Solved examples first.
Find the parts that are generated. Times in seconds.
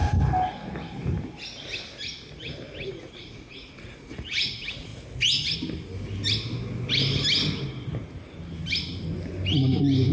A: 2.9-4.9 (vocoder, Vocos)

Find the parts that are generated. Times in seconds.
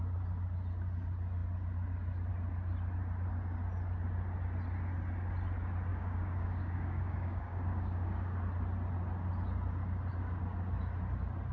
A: 5.9-8.4 (codec, DAC)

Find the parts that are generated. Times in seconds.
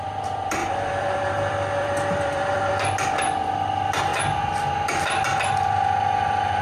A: 0.6-2.7 (vocoder, BigVGAN v2)